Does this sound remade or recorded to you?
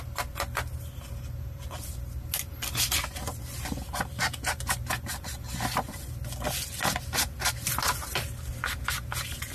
recorded